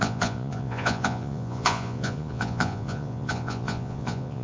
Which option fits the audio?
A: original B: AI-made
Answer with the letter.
B